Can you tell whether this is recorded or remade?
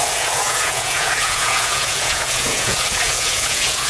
remade